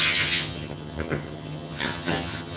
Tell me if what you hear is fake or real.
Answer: fake